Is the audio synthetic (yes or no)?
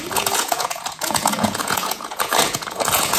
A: yes